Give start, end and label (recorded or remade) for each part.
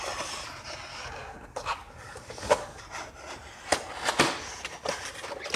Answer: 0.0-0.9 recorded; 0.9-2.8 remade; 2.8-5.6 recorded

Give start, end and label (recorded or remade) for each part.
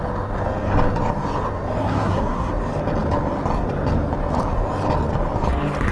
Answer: 0.0-1.8 recorded; 1.8-2.5 remade; 2.5-5.9 recorded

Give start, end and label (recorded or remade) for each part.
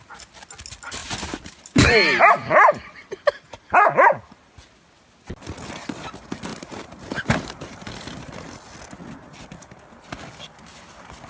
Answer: 0.0-3.0 recorded; 3.0-3.6 remade; 3.6-6.5 recorded; 6.5-7.9 remade; 7.9-11.3 recorded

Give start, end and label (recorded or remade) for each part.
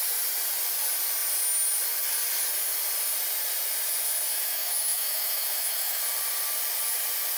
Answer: 0.0-4.3 recorded; 4.3-6.0 remade; 6.0-7.4 recorded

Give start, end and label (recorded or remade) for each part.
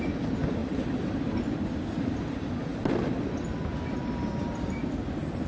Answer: 0.0-0.6 recorded; 0.6-1.4 remade; 1.4-2.7 recorded; 2.7-3.6 remade; 3.6-5.5 recorded